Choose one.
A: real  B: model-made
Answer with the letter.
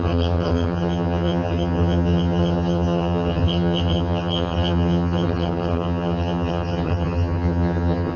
B